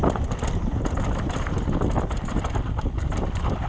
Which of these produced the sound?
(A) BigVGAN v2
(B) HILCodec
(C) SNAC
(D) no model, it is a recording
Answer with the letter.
A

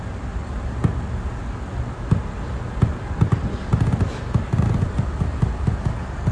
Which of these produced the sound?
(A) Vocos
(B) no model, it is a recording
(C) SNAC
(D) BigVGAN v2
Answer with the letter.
B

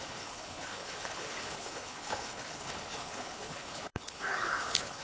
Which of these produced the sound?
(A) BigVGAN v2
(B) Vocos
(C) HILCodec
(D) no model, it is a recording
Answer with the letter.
C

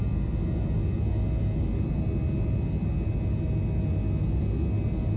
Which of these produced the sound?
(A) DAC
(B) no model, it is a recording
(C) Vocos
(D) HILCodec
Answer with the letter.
B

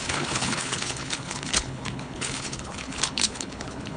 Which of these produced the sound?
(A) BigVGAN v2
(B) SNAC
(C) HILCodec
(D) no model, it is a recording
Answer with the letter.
C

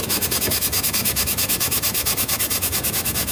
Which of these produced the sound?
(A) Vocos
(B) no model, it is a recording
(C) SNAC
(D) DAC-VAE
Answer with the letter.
D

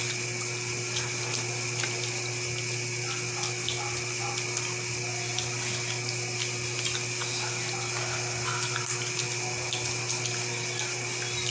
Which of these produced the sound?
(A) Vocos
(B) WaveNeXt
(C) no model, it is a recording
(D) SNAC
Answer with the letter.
C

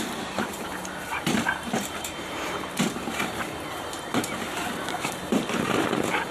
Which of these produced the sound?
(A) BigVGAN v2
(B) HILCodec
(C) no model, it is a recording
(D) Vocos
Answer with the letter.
A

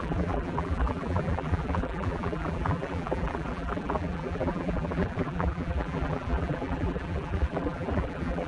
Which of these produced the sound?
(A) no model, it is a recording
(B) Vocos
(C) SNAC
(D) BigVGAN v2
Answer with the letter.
D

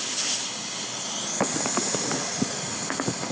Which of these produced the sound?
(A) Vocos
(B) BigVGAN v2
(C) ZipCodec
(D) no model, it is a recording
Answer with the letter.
D